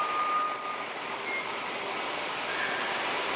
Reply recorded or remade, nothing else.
recorded